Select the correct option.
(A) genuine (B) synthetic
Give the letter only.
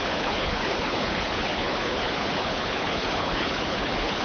B